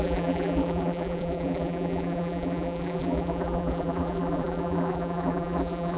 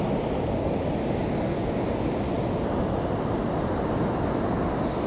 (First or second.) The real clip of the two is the second